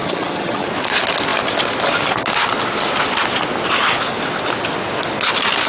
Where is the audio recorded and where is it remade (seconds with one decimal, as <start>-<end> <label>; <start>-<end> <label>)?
0.0-0.7 remade; 0.7-5.7 recorded